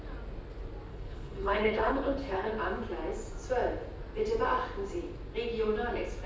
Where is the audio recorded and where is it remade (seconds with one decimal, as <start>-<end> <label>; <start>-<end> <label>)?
0.0-0.9 recorded; 0.9-2.5 remade; 2.5-6.3 recorded